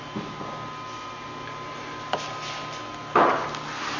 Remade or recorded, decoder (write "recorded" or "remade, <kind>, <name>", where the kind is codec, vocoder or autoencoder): recorded